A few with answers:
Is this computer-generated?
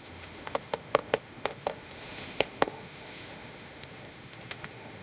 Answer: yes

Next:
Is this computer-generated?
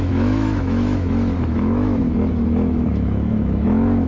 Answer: yes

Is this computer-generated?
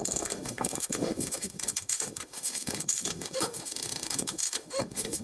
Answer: yes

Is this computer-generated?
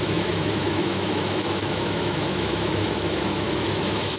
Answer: yes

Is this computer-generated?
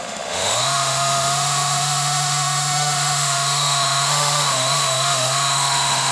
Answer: yes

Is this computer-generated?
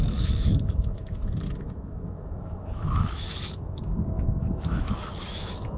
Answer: yes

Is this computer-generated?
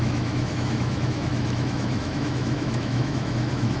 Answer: yes